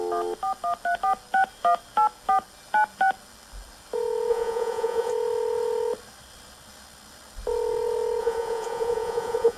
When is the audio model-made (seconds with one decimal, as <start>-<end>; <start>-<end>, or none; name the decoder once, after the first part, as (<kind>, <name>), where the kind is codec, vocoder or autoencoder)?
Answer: 4.3-5.1 (vocoder, Vocos); 8.2-9.6